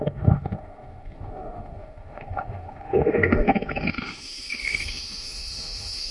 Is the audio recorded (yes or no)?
no